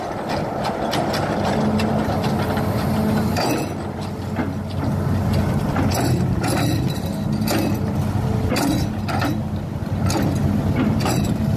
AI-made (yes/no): no